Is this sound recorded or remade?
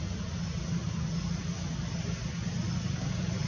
recorded